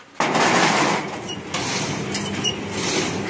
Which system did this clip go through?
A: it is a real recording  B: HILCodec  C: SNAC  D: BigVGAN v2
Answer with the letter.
A